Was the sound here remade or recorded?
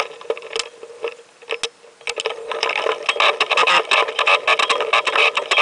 recorded